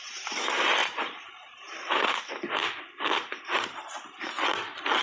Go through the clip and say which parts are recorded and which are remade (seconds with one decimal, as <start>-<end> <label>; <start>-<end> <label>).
0.0-0.8 recorded; 0.8-2.3 remade; 2.3-5.0 recorded